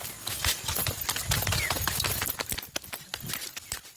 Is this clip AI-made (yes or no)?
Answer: no